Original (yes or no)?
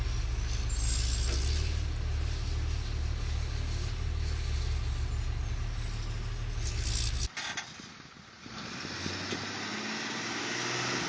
yes